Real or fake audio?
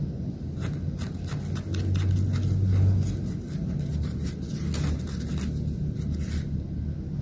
real